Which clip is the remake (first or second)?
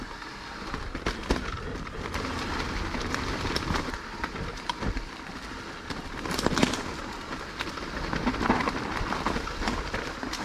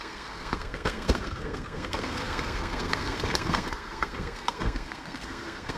second